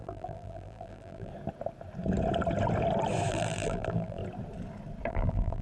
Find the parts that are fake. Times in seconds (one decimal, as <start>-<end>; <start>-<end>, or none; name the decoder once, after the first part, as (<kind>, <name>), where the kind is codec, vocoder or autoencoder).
0.0-1.3 (vocoder, BigVGAN v2); 3.3-4.2; 5.1-5.6